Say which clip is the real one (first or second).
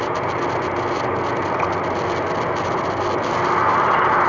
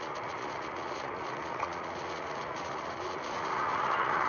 first